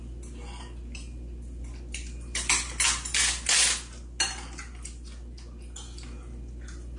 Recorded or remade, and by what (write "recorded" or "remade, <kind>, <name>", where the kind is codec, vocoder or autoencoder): recorded